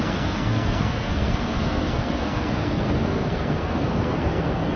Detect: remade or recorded remade